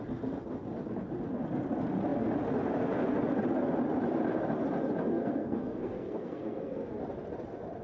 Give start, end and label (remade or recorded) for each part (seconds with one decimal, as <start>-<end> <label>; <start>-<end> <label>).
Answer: 0.0-5.1 recorded; 5.1-7.0 remade; 7.0-7.8 recorded